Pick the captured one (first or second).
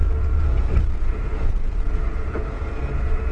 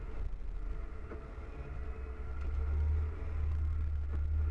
second